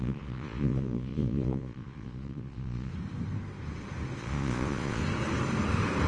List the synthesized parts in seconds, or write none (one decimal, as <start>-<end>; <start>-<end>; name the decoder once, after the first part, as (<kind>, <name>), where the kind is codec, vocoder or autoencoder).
0.0-2.9 (vocoder, Vocos); 4.2-5.0